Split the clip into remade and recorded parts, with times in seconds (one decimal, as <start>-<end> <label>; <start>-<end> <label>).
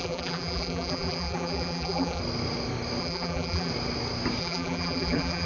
0.0-2.2 remade; 2.2-3.0 recorded; 3.0-3.7 remade; 3.7-4.4 recorded; 4.4-5.5 remade